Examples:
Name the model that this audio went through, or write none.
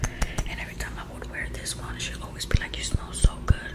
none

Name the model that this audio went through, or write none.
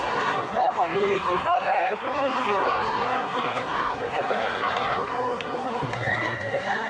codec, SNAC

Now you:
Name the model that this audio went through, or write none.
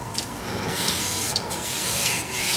codec, SNAC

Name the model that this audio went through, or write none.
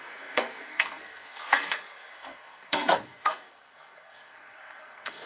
codec, SNAC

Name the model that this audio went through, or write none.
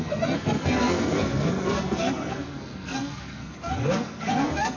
codec, SNAC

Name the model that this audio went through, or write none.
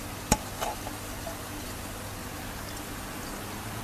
none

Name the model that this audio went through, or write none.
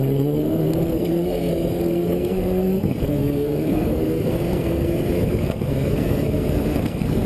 codec, SNAC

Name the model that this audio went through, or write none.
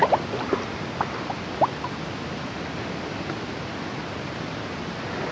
none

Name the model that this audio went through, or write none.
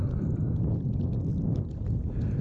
none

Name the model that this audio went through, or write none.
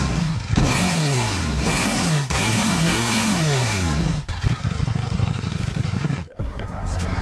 codec, SNAC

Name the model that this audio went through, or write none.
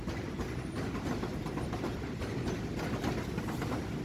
none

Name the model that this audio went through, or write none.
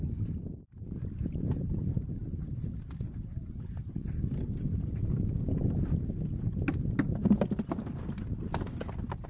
none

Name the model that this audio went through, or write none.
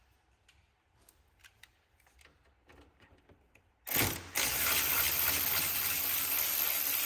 none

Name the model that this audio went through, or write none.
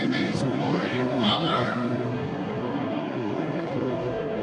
codec, SNAC